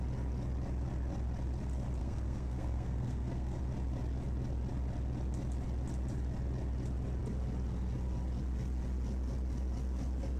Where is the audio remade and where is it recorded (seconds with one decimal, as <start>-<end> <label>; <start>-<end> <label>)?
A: 0.0-2.0 recorded; 2.0-3.6 remade; 3.6-10.4 recorded